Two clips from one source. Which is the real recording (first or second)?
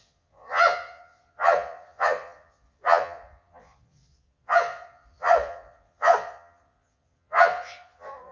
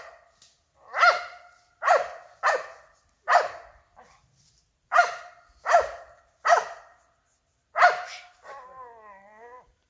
second